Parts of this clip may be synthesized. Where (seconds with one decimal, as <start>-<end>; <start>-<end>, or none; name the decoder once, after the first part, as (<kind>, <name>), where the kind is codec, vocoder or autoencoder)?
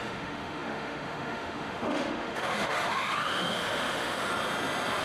0.0-4.3 (autoencoder, DAC-VAE)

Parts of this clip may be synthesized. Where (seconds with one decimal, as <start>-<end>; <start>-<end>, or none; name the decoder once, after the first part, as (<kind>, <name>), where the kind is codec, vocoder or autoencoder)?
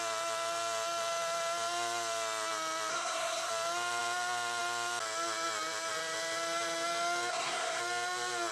2.9-3.5 (codec, SNAC); 7.3-7.8